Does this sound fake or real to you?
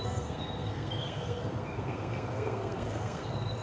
fake